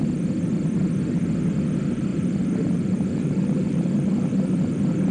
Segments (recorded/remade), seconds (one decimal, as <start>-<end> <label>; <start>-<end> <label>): 0.0-2.1 recorded; 2.1-5.1 remade